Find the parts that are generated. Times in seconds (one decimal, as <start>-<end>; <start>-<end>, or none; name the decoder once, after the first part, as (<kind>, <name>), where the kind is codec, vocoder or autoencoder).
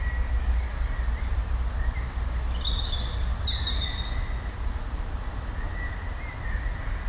none